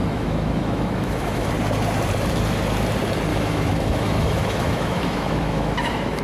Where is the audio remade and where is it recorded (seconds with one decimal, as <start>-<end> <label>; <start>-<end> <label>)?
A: 0.0-1.5 remade; 1.5-3.3 recorded; 3.3-6.2 remade